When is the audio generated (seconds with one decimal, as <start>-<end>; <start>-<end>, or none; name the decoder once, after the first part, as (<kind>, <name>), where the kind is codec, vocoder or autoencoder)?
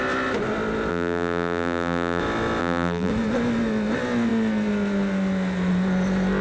0.9-2.2 (vocoder, BigVGAN v2); 2.6-3.1